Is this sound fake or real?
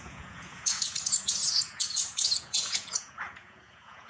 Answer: fake